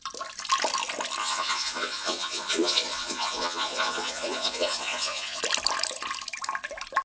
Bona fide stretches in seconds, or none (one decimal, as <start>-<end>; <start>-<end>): 0.0-1.2; 5.4-7.0